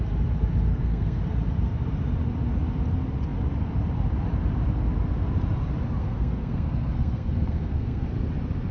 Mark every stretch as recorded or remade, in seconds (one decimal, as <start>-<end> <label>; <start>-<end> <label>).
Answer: 0.0-0.7 recorded; 0.7-1.2 remade; 1.2-6.0 recorded; 6.0-8.1 remade; 8.1-8.7 recorded